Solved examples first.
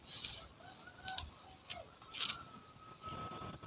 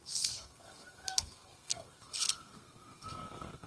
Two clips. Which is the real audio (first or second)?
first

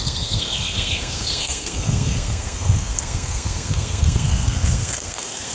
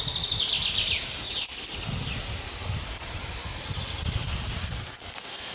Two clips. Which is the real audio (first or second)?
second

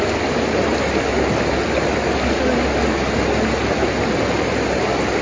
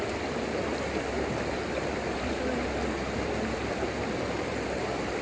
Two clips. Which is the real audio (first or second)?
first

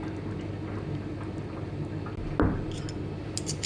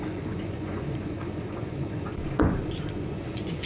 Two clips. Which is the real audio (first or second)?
first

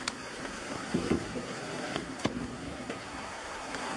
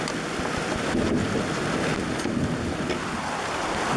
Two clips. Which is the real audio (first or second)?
second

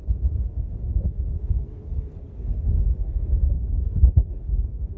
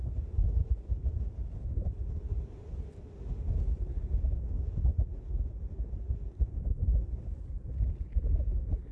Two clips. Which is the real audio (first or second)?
second